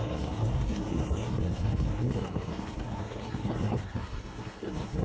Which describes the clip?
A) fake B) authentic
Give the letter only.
A